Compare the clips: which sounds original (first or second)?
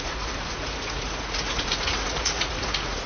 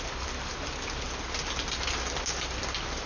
second